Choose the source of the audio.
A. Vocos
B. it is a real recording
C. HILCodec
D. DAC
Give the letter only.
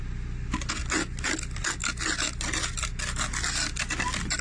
B